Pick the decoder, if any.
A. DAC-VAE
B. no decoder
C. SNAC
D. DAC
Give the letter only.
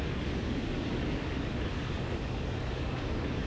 D